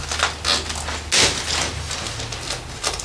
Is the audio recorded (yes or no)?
yes